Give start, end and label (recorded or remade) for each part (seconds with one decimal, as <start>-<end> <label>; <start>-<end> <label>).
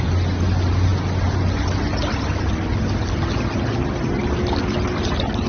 0.0-5.5 recorded